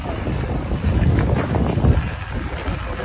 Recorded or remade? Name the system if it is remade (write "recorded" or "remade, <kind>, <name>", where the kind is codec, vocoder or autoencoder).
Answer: recorded